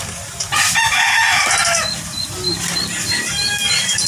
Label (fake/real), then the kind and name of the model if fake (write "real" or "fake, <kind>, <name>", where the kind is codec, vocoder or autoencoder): real